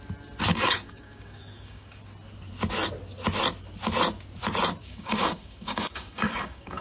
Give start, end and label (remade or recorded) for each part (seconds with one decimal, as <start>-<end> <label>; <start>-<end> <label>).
0.0-0.5 recorded; 0.5-2.0 remade; 2.0-4.8 recorded; 4.8-6.8 remade